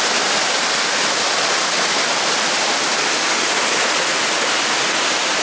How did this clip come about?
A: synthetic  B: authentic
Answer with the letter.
A